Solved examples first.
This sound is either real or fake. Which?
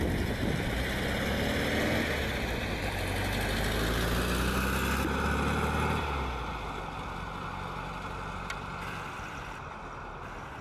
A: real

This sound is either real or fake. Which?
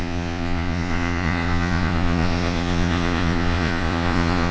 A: fake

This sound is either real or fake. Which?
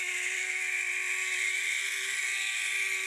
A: real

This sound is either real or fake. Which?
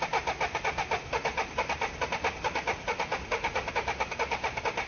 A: real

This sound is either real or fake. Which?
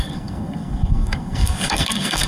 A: fake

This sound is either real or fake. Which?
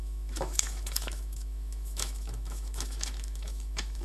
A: fake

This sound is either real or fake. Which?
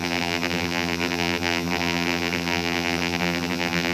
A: fake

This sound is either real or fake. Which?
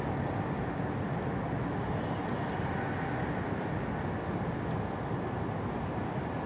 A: real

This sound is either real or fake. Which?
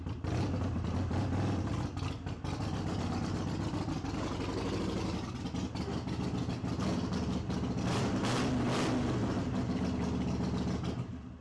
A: real